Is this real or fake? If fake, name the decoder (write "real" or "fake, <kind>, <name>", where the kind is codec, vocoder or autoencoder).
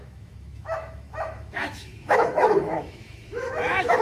fake, autoencoder, DAC-VAE